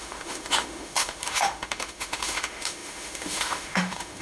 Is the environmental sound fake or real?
fake